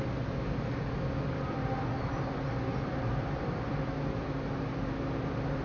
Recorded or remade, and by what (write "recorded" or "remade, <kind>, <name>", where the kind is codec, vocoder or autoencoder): recorded